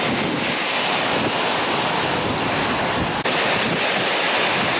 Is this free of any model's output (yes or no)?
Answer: yes